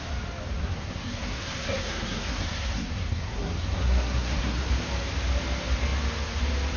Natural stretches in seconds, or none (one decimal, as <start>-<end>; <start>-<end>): 0.0-0.6; 4.7-6.8

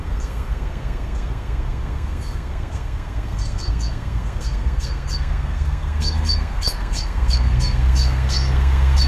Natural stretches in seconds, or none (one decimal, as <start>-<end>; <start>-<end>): none

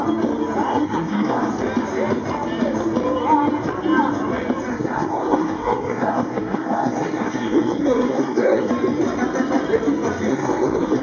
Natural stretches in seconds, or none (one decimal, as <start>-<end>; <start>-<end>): 0.0-0.7; 1.5-4.7; 8.7-10.3

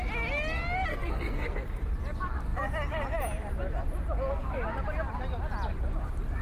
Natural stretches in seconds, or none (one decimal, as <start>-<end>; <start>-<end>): 0.0-0.9; 1.8-6.4

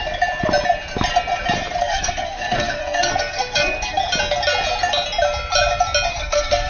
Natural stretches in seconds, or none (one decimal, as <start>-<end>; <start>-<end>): 0.0-1.8; 4.0-6.1

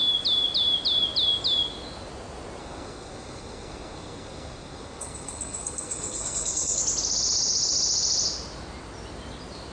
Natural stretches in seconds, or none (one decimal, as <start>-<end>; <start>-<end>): 0.0-2.6; 6.8-9.7

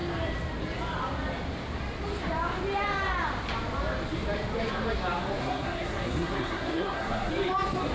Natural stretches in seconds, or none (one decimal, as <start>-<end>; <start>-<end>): 0.0-5.4; 7.3-7.9

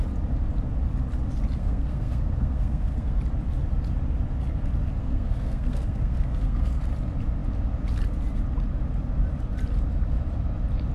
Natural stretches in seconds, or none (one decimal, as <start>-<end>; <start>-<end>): 0.0-1.6; 3.2-5.0; 6.9-10.9